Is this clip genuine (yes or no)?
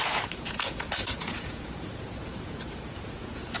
no